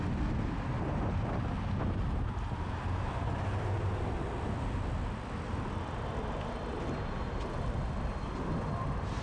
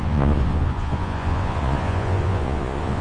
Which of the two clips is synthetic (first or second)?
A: second